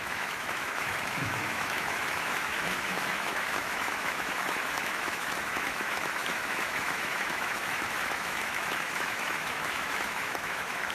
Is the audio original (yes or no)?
no